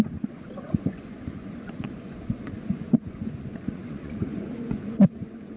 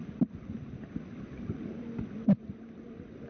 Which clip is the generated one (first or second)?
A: first